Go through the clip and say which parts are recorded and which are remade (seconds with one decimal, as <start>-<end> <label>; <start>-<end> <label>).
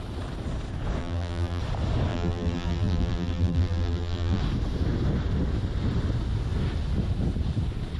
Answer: 0.0-1.0 recorded; 1.0-1.6 remade; 1.6-2.1 recorded; 2.1-4.4 remade; 4.4-8.0 recorded